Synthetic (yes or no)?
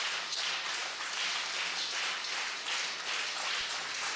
no